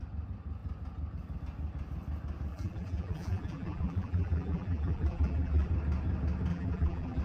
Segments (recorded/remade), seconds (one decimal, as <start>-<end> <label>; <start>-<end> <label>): 0.0-2.5 recorded; 2.5-5.7 remade; 5.7-6.5 recorded; 6.5-7.2 remade